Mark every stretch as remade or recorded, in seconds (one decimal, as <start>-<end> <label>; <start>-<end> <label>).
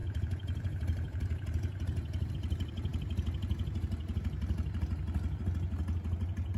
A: 0.0-2.3 remade; 2.3-6.6 recorded